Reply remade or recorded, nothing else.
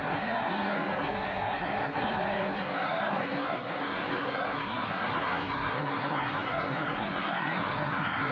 remade